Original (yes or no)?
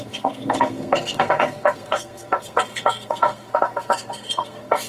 no